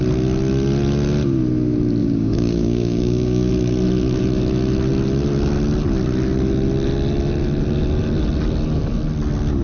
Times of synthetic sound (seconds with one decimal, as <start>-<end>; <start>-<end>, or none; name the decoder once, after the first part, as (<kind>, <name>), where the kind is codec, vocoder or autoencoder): 2.0-3.5 (codec, DAC)